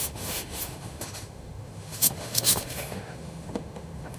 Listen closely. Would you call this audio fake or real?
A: fake